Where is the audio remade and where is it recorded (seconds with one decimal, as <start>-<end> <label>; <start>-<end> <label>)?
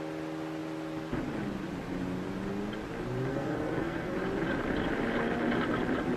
0.0-3.3 recorded; 3.3-4.1 remade; 4.1-6.2 recorded